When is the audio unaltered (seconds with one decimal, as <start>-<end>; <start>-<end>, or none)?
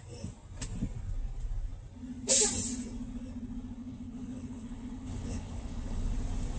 0.0-3.8; 6.1-6.6